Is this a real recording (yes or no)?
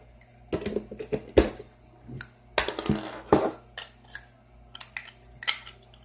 yes